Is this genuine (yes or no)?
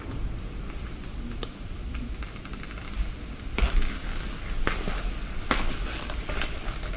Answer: yes